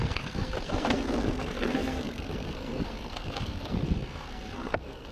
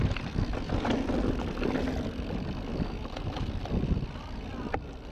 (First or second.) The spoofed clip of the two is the first